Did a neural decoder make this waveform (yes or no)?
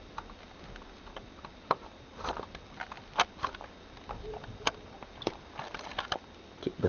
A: no